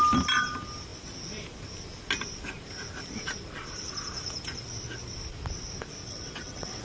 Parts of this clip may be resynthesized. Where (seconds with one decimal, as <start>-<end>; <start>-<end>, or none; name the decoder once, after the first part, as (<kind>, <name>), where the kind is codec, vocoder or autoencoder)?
6.0-6.8 (vocoder, WaveNeXt)